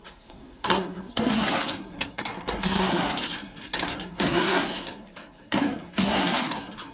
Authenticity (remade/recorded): remade